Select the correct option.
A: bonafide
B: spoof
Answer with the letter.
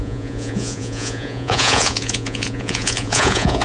B